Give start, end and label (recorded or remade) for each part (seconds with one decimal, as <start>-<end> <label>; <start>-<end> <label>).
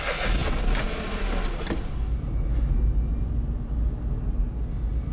0.0-5.1 recorded